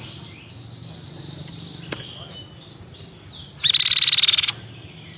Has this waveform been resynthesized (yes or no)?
no